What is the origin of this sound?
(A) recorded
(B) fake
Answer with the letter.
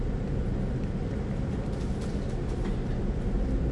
A